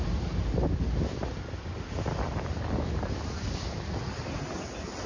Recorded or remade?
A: recorded